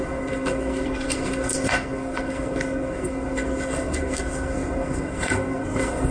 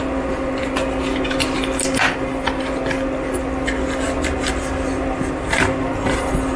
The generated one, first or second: first